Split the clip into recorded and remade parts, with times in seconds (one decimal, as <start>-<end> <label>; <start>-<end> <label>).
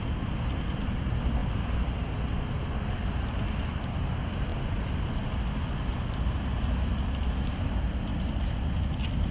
0.0-9.3 recorded